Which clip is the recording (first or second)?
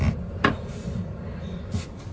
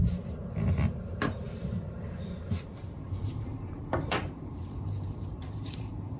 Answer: first